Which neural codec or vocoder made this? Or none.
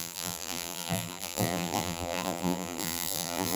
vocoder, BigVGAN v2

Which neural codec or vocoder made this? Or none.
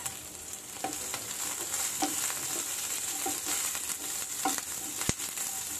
vocoder, BigVGAN v2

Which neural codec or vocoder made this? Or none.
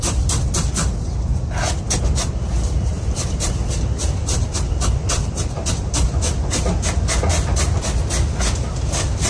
none